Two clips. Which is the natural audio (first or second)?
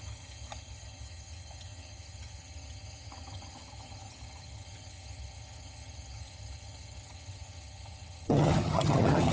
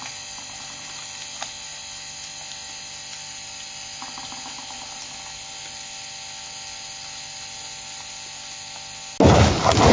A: second